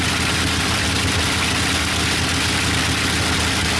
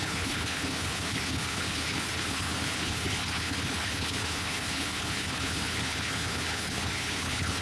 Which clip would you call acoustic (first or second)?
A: first